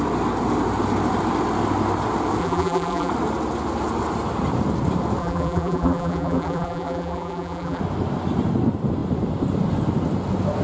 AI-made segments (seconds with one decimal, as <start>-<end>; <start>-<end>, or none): 2.4-3.1; 5.2-7.8